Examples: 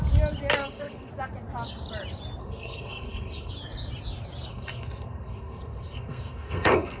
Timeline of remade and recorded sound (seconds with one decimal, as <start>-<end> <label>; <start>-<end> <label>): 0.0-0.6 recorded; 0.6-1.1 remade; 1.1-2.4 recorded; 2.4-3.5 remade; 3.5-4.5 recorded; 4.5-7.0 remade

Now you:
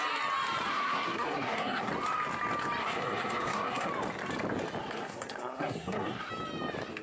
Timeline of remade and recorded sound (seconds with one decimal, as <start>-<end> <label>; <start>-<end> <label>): 0.0-0.7 recorded; 0.7-1.9 remade; 1.9-2.8 recorded; 2.8-3.9 remade; 3.9-4.8 recorded; 4.8-6.3 remade; 6.3-7.0 recorded

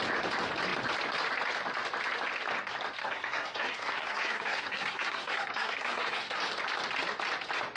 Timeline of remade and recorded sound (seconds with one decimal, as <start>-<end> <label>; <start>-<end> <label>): 0.0-3.0 recorded; 3.0-6.4 remade; 6.4-7.8 recorded